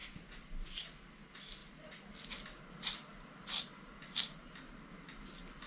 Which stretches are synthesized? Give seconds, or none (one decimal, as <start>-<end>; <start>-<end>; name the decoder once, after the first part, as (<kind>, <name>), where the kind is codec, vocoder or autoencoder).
none